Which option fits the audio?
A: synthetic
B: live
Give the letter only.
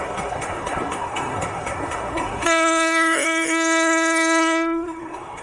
A